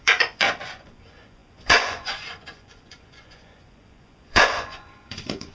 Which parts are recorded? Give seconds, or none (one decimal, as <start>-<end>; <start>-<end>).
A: none